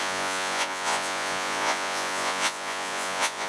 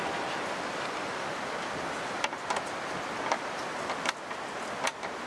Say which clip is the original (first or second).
second